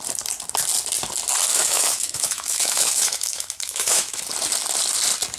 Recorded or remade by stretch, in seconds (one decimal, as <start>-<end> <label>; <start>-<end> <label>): 0.0-1.5 recorded; 1.5-4.2 remade; 4.2-5.4 recorded